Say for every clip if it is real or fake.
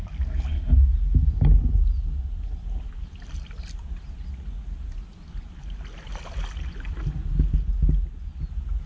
real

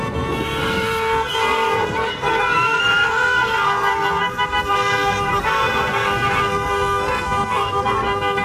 fake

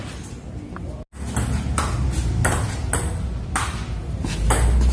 real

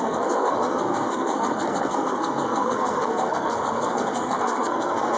fake